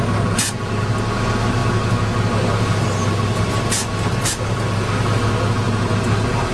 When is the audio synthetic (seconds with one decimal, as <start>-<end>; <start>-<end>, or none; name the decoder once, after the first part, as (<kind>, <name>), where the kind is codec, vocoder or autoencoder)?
none